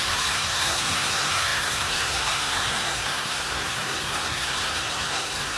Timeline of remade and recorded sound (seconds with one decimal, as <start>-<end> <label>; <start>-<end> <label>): 0.0-5.6 remade